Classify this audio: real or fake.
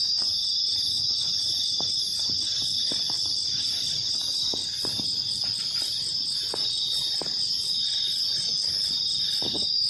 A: real